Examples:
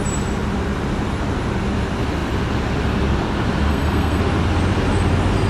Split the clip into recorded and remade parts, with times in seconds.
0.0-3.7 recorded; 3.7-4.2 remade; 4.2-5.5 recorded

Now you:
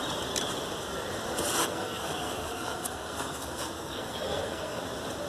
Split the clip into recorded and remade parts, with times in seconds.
0.0-1.6 recorded; 1.6-4.8 remade; 4.8-5.3 recorded

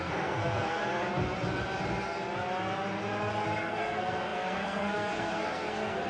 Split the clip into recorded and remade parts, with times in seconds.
0.0-0.8 remade; 0.8-3.6 recorded; 3.6-6.1 remade